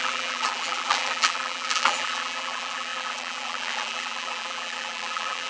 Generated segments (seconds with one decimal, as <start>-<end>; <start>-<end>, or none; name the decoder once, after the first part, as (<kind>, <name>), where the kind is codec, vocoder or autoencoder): 0.0-5.5 (vocoder, BigVGAN v2)